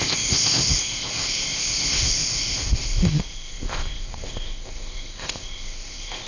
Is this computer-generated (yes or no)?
yes